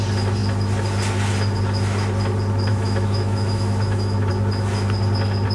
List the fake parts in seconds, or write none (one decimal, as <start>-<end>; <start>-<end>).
2.7-4.3

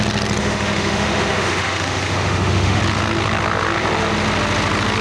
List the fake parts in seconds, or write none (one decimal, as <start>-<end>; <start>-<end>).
0.4-2.8

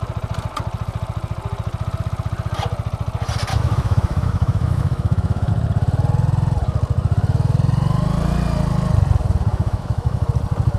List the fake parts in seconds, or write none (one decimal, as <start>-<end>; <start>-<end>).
3.5-5.5; 9.5-10.3

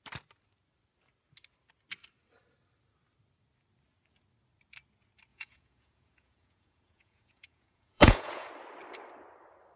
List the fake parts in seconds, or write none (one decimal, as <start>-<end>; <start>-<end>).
5.3-8.5

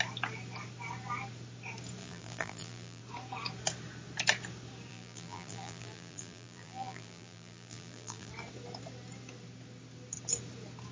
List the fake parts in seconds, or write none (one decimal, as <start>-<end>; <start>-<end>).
2.0-3.0; 4.9-8.3